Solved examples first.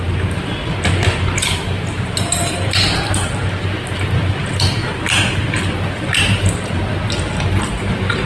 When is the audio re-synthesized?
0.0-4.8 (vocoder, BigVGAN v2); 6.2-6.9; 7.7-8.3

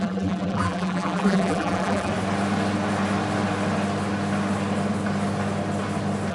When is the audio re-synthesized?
0.0-2.1 (vocoder, BigVGAN v2)

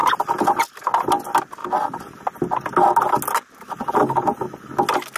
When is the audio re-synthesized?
none

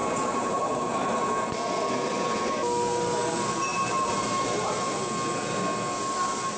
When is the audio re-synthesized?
0.0-1.2 (vocoder, BigVGAN v2); 3.7-5.0

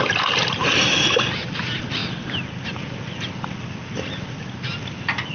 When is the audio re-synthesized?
0.0-2.0 (vocoder, BigVGAN v2)

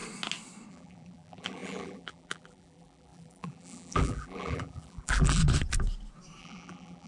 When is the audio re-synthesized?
0.7-5.4 (vocoder, BigVGAN v2); 6.4-7.1

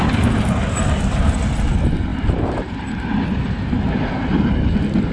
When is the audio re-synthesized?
2.1-5.1 (vocoder, BigVGAN v2)